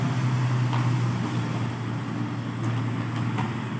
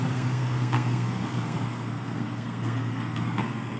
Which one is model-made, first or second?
second